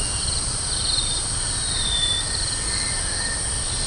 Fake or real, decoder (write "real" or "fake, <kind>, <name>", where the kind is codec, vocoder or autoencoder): real